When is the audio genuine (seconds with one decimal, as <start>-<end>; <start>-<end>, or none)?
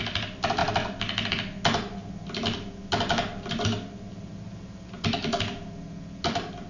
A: 0.0-6.7